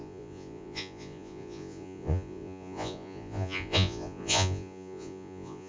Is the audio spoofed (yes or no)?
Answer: yes